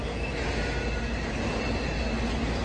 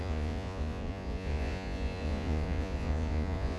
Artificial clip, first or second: second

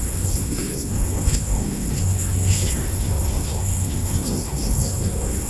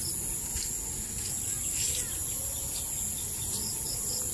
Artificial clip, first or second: first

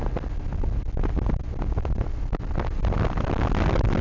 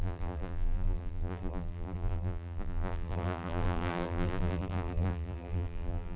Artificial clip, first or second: second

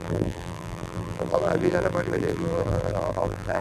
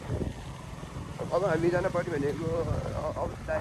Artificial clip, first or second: first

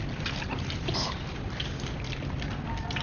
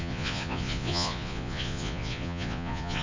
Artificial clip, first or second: second